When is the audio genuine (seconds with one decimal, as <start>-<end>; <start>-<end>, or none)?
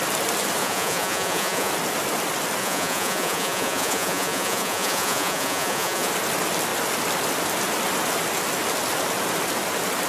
0.0-0.6; 1.7-2.6; 6.1-10.1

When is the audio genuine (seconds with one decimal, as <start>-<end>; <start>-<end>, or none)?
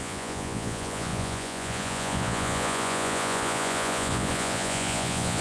none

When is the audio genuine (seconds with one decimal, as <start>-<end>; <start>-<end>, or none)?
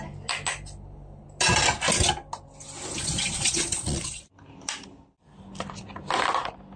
0.0-3.0; 4.2-6.8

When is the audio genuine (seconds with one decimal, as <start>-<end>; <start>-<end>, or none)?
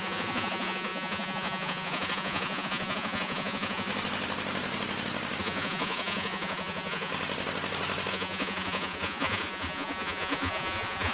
3.9-5.4; 7.1-8.1